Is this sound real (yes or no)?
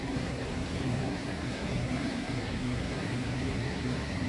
no